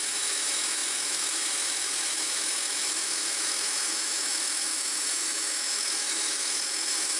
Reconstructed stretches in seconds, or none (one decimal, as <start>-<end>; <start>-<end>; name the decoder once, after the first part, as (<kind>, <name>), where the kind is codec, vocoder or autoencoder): 0.0-7.2 (autoencoder, DAC-VAE)